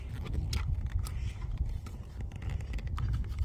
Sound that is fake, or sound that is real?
fake